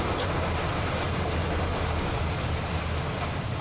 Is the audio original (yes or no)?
yes